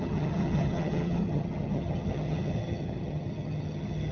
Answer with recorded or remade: remade